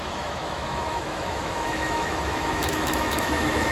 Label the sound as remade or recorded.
remade